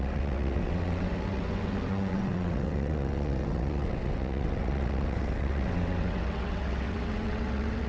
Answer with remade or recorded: remade